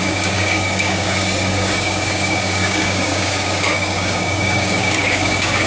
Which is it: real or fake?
fake